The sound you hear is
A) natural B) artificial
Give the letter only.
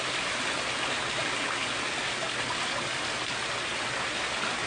A